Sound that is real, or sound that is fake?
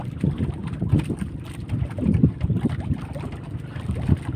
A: real